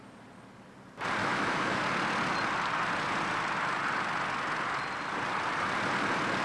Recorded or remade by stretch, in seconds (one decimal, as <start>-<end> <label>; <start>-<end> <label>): 0.0-1.2 recorded; 1.2-1.8 remade; 1.8-6.4 recorded